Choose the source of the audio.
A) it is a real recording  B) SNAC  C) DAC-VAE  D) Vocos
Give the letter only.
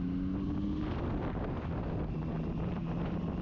A